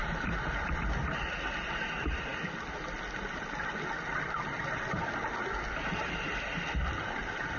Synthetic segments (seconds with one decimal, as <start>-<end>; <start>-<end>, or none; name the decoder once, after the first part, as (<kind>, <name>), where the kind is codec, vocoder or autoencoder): none